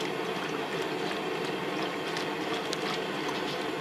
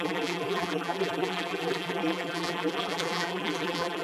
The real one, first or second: first